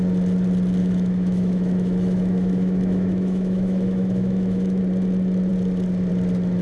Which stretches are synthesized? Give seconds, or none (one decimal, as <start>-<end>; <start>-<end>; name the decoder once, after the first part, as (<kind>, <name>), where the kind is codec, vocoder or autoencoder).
0.8-4.8 (autoencoder, DAC-VAE)